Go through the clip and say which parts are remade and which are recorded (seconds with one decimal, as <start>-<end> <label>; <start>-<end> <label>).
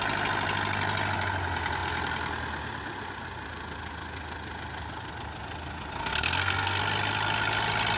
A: 0.0-6.0 recorded; 6.0-6.8 remade; 6.8-8.0 recorded